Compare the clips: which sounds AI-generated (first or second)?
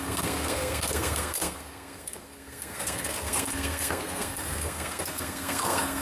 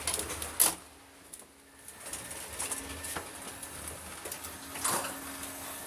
first